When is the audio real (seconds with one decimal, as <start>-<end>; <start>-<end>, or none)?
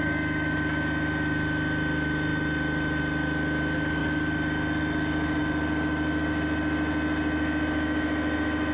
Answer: 0.0-8.7